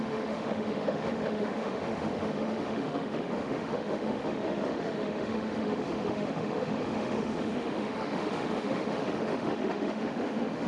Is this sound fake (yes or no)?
yes